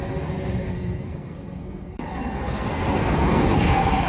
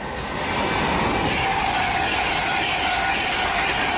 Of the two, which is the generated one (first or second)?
first